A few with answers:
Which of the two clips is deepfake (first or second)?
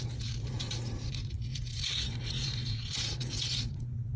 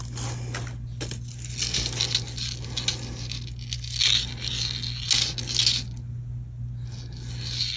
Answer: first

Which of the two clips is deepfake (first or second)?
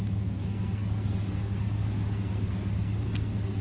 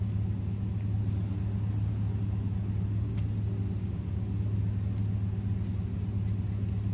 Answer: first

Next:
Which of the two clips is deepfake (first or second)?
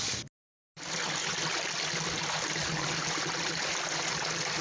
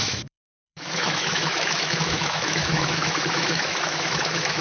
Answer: second